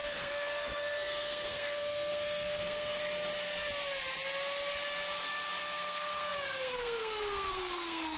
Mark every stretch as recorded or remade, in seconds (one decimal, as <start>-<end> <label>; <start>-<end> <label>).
0.0-3.0 remade; 3.0-5.6 recorded; 5.6-8.2 remade